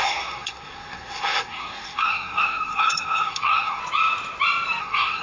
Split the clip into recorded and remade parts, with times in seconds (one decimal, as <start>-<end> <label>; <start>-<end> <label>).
0.0-3.8 remade; 3.8-4.8 recorded; 4.8-5.2 remade